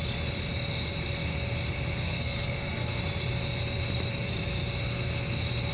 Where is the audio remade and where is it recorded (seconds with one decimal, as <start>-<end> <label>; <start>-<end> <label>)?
0.0-2.0 recorded; 2.0-3.0 remade; 3.0-5.7 recorded